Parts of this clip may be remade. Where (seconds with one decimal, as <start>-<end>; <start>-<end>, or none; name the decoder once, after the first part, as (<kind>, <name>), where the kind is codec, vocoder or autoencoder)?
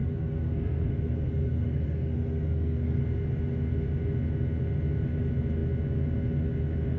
0.0-3.0 (codec, SNAC)